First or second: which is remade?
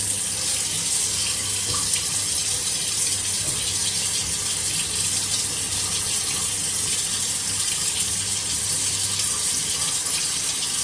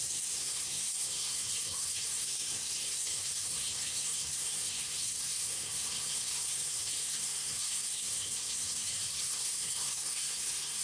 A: second